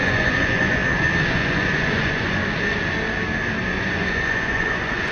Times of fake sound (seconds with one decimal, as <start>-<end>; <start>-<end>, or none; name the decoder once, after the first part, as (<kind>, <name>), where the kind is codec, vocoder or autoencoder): 0.0-0.8 (vocoder, Vocos); 1.3-2.4; 3.8-5.1